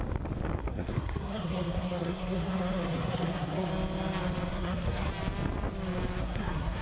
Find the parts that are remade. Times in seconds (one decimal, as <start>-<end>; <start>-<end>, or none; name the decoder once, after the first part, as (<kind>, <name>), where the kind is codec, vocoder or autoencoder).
0.6-3.7 (codec, SNAC); 4.5-5.1; 6.2-6.8